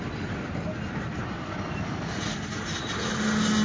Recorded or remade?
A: recorded